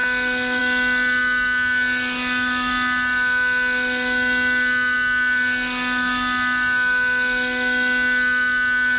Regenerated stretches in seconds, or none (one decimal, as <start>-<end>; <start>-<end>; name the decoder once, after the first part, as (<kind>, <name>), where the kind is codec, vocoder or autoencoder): none